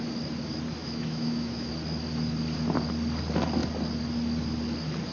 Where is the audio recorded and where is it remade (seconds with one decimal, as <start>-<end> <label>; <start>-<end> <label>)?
0.0-0.8 recorded; 0.8-1.7 remade; 1.7-5.1 recorded